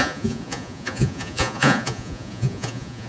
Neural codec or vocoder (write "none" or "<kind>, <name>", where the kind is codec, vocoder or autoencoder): vocoder, Vocos